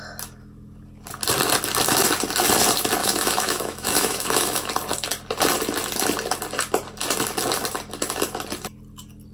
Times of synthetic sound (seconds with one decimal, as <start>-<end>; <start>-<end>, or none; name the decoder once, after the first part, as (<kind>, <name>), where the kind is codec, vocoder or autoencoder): 3.0-4.7 (autoencoder, DAC-VAE)